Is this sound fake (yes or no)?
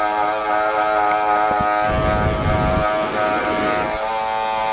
no